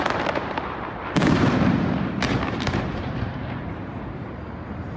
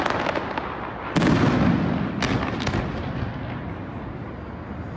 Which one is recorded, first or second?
second